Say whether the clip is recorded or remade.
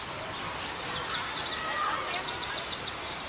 recorded